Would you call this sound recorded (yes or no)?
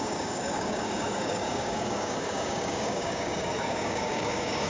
no